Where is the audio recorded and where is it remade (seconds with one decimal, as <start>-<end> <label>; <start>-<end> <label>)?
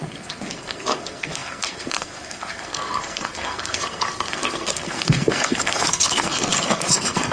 0.0-7.3 remade